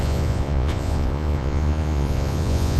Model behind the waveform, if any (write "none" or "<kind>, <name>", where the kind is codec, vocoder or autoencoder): vocoder, Vocos